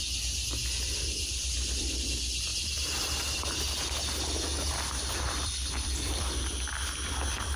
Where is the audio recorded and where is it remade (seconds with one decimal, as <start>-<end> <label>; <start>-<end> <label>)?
0.0-2.5 remade; 2.5-5.0 recorded; 5.0-7.6 remade